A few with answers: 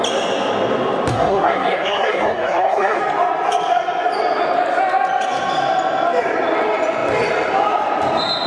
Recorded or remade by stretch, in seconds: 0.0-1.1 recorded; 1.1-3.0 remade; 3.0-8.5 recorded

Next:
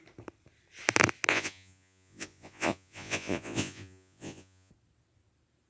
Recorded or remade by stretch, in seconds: 0.0-1.3 recorded; 1.3-4.7 remade; 4.7-5.7 recorded

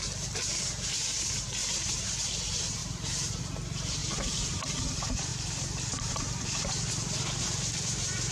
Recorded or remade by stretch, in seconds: 0.0-8.3 remade